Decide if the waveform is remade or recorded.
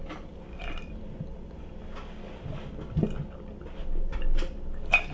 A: recorded